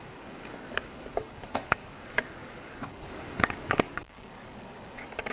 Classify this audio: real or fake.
fake